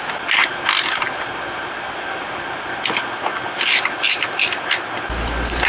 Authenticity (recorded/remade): recorded